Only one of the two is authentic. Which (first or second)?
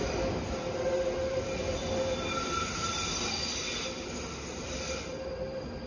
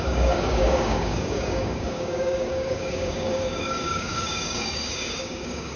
first